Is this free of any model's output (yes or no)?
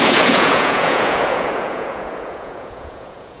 no